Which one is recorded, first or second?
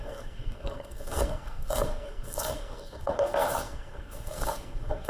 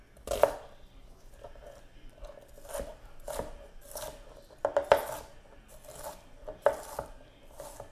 second